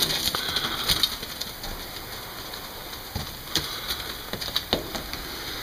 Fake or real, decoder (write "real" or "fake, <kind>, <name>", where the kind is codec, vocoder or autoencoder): real